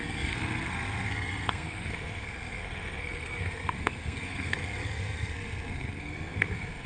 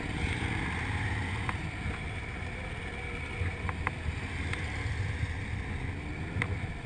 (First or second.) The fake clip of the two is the first